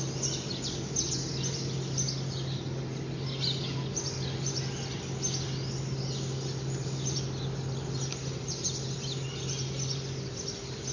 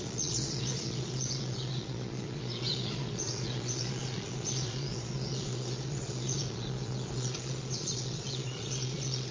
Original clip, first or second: first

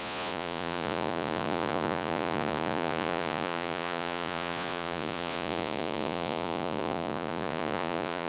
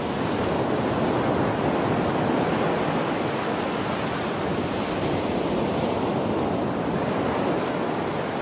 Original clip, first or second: second